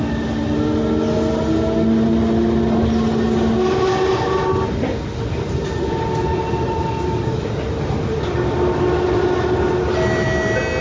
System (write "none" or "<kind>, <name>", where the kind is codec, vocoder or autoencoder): none